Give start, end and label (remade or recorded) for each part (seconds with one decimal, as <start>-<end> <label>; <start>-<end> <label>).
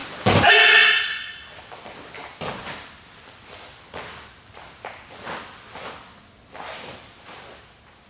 0.0-8.1 recorded